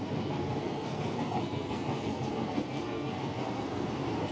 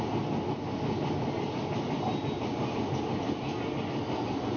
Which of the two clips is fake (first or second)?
first